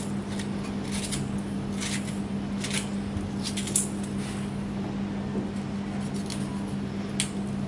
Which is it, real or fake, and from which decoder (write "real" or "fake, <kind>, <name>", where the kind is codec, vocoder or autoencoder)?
real